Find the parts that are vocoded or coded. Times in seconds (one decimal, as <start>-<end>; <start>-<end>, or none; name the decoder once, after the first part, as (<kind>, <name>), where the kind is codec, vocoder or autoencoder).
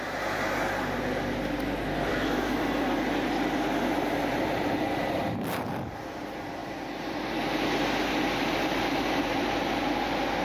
2.1-2.6 (autoencoder, DAC-VAE)